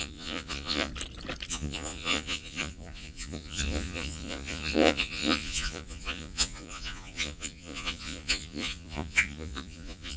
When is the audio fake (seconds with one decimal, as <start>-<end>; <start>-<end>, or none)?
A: 0.0-0.9; 1.5-10.2